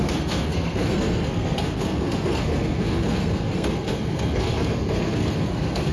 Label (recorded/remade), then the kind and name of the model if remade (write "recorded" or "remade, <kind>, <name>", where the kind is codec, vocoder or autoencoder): remade, codec, SNAC